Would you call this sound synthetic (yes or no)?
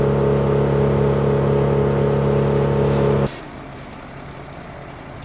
no